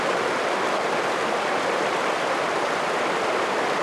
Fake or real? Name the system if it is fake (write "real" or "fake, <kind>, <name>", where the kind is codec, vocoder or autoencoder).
real